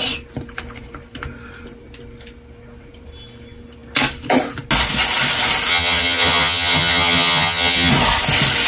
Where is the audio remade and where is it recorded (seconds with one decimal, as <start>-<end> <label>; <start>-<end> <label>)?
0.0-5.7 recorded; 5.7-7.9 remade; 7.9-8.7 recorded